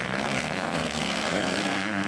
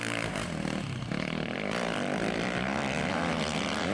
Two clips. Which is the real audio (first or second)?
second